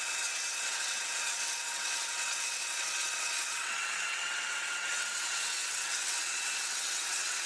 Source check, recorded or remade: remade